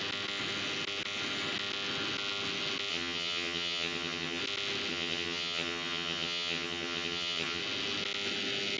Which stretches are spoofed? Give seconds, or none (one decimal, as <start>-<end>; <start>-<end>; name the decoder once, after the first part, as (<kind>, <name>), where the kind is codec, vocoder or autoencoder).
2.9-4.4 (vocoder, HiFi-GAN); 4.9-7.6